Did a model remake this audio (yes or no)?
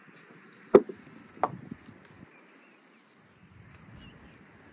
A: no